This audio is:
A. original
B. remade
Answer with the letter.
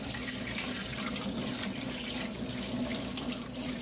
A